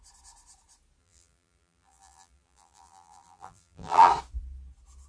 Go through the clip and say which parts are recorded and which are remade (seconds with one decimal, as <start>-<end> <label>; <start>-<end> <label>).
0.0-1.0 recorded; 1.0-4.1 remade; 4.1-5.1 recorded